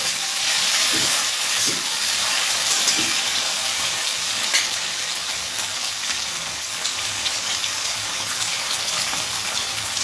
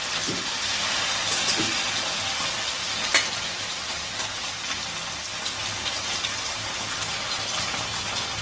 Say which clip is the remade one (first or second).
first